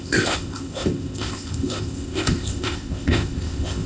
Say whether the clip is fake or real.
fake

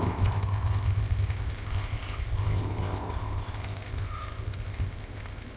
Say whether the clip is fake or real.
fake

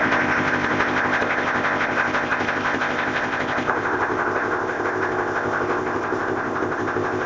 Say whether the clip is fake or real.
fake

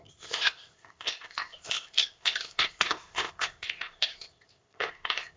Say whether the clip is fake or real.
fake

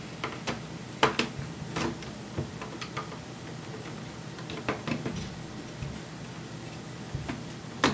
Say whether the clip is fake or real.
real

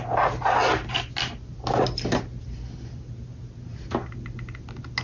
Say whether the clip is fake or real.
real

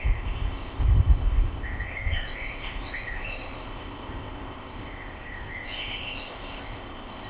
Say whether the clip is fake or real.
fake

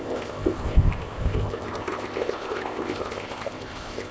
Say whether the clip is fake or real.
fake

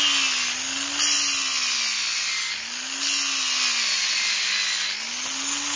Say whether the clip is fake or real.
real